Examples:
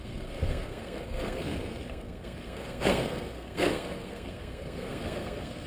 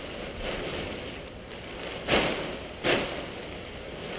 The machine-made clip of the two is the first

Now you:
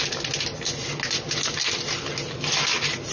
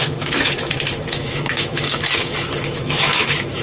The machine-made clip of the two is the second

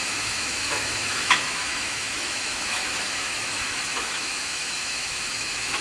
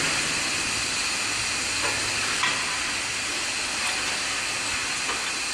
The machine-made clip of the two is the first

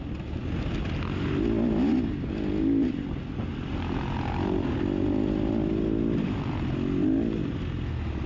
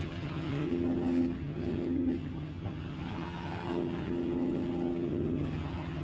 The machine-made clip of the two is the second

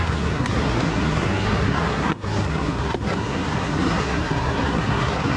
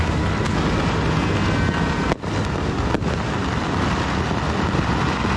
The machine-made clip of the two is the first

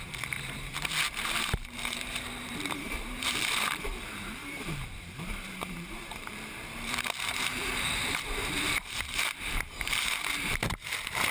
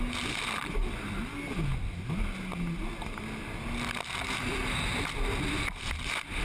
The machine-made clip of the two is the first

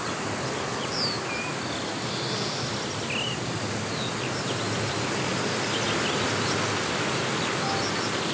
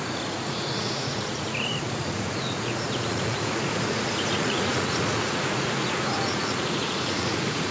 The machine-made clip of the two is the second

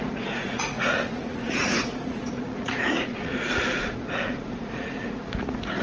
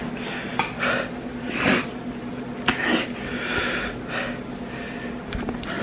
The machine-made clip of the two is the first